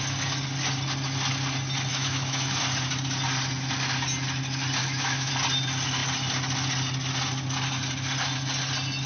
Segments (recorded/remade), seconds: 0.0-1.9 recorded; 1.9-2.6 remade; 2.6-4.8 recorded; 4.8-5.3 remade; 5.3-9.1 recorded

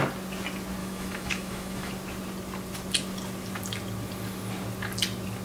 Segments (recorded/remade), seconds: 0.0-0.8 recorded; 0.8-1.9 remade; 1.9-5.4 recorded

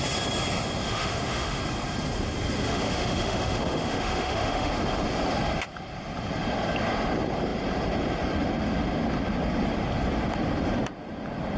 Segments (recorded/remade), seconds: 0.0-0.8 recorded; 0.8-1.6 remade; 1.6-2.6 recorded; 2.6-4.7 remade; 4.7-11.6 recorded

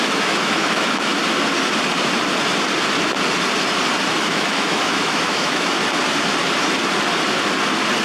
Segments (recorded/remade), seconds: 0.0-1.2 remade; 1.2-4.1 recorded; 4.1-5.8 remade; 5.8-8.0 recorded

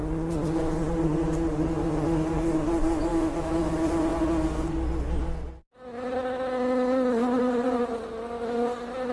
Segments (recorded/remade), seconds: 0.0-3.1 recorded; 3.1-3.6 remade; 3.6-9.1 recorded